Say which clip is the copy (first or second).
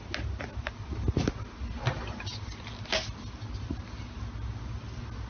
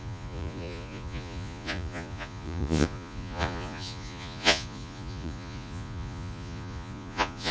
second